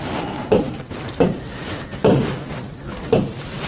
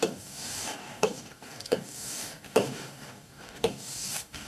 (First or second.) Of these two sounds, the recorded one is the first